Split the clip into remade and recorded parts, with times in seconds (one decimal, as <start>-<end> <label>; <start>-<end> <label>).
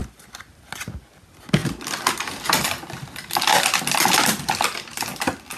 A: 0.0-5.6 recorded